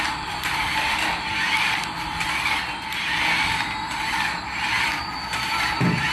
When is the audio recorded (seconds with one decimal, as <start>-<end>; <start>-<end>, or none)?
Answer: 0.7-4.4